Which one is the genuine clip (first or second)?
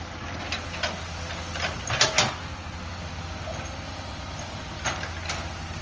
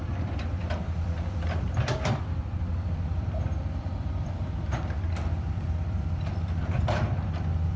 first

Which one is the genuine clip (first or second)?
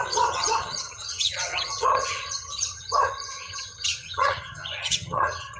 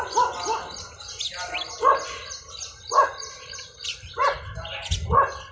second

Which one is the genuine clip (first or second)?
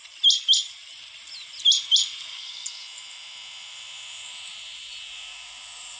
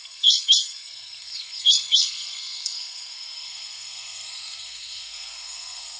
first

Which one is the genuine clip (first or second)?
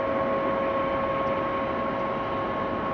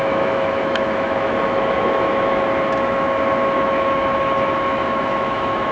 first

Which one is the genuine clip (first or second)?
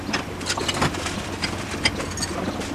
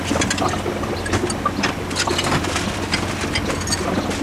second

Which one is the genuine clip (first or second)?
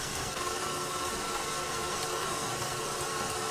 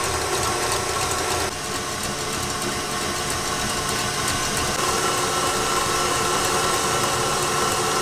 second